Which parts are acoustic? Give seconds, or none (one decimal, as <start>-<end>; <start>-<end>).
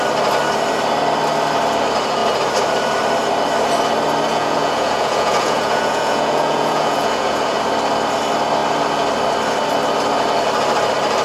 0.0-4.3; 7.6-11.2